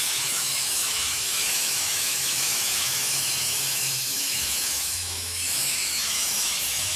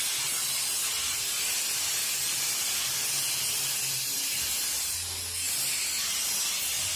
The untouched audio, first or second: second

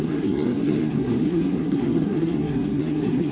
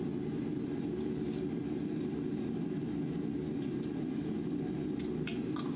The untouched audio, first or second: second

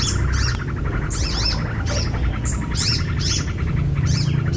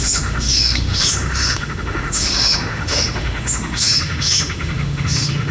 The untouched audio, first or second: first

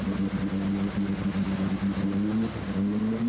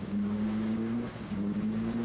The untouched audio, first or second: first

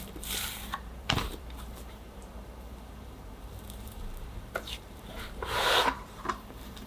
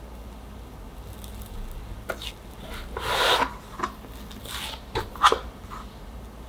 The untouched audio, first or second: second